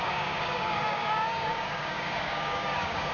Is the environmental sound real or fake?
fake